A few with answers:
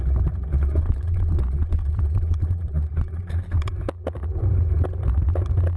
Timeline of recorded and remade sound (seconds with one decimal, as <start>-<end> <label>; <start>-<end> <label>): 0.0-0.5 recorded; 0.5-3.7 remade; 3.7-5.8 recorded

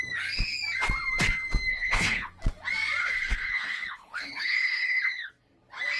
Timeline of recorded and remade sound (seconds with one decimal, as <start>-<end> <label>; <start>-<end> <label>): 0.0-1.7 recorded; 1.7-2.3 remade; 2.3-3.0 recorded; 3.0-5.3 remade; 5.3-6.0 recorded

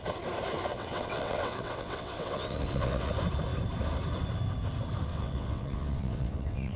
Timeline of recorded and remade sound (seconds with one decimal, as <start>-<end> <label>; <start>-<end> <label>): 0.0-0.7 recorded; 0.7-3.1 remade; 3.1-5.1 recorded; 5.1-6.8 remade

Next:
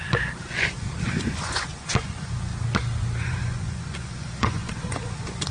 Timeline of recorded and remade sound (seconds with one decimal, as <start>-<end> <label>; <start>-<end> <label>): 0.0-2.5 remade; 2.5-3.2 recorded; 3.2-5.5 remade

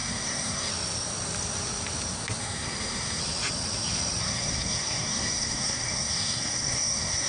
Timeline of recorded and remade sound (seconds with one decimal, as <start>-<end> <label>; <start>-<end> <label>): 0.0-0.7 remade; 0.7-2.4 recorded; 2.4-3.2 remade; 3.2-4.2 recorded; 4.2-7.3 remade

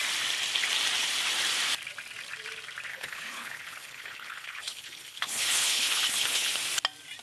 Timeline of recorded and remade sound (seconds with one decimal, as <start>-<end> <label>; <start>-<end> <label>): 0.0-2.9 recorded; 2.9-6.5 remade; 6.5-7.2 recorded

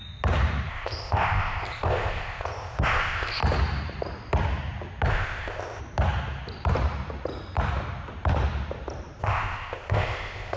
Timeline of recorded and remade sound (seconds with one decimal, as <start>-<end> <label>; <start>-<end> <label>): 0.0-0.7 recorded; 0.7-3.4 remade; 3.4-5.1 recorded; 5.1-5.8 remade; 5.8-9.2 recorded; 9.2-10.6 remade

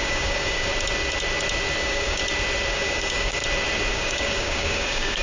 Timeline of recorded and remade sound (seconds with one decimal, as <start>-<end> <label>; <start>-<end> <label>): 0.0-0.7 remade; 0.7-1.8 recorded; 1.8-2.2 remade; 2.2-2.7 recorded; 2.7-3.4 remade; 3.4-3.9 recorded; 3.9-5.2 remade